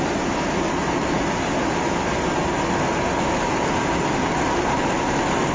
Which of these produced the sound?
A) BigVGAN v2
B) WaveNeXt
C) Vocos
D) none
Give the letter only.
D